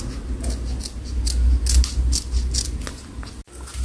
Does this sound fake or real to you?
real